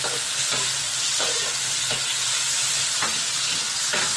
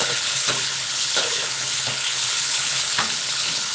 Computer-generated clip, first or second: second